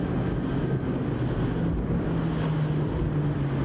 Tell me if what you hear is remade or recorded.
recorded